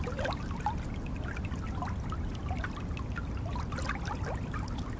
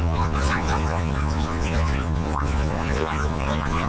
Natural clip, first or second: first